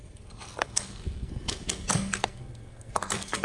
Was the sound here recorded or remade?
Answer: remade